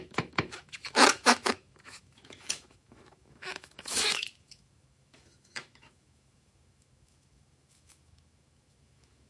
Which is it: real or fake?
fake